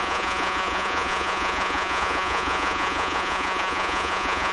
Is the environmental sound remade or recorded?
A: remade